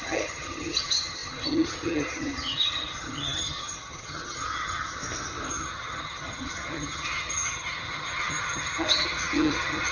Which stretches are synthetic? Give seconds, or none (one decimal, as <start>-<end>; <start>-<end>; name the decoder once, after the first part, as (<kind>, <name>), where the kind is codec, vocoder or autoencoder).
0.0-5.0 (vocoder, HiFi-GAN); 5.5-9.9